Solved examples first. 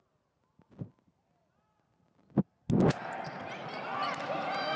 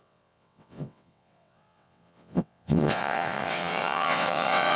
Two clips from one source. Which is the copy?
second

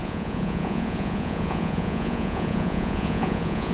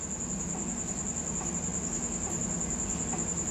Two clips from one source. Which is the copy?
first